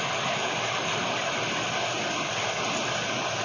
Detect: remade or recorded recorded